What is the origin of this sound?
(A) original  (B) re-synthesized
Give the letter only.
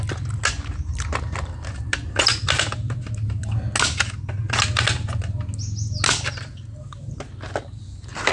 A